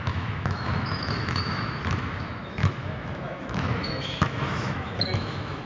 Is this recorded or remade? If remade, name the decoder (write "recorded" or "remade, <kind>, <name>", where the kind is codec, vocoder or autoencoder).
remade, autoencoder, DAC-VAE